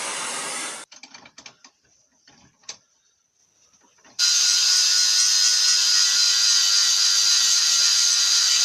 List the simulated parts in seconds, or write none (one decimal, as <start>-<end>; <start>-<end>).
0.0-4.9; 7.6-8.6